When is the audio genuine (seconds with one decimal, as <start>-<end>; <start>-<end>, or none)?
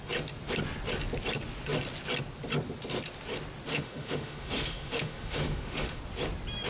0.0-3.7; 6.0-6.7